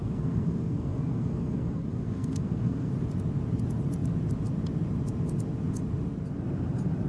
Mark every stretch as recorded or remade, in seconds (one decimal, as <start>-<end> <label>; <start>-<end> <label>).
0.0-2.9 remade; 2.9-7.1 recorded